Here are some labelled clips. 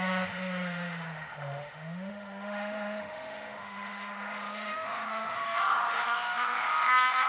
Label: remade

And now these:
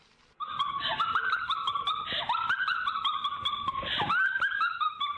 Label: recorded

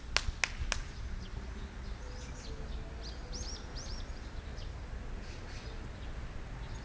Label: recorded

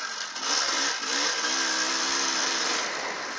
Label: recorded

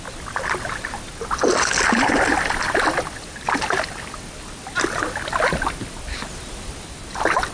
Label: recorded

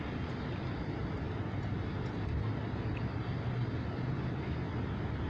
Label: recorded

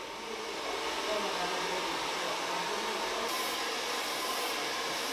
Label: recorded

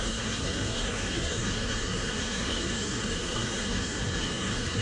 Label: remade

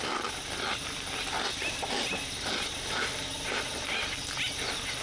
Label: recorded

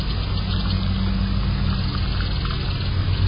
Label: recorded